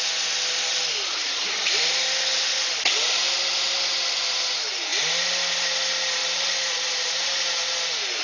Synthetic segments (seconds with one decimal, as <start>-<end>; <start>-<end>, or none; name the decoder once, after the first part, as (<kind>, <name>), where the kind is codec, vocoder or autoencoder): 6.2-7.3 (vocoder, BigVGAN v2)